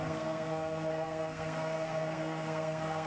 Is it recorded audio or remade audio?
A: remade